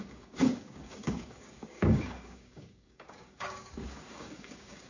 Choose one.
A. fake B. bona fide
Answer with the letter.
A